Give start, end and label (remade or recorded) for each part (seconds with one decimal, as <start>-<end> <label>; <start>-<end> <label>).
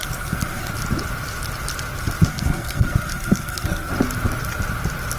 0.0-0.7 remade; 0.7-2.3 recorded; 2.3-3.9 remade; 3.9-5.2 recorded